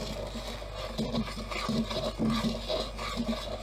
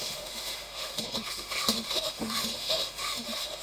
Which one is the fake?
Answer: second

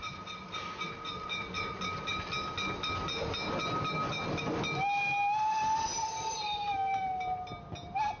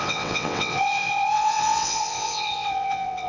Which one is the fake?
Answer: second